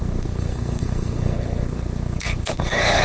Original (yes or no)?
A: no